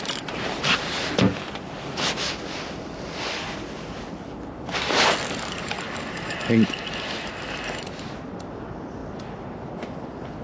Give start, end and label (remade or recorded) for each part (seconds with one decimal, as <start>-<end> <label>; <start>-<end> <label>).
0.0-9.0 recorded; 9.0-9.7 remade; 9.7-10.4 recorded

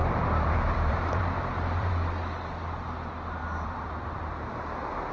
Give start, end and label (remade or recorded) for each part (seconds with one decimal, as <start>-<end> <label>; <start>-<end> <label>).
0.0-1.9 remade; 1.9-3.4 recorded; 3.4-4.3 remade; 4.3-5.1 recorded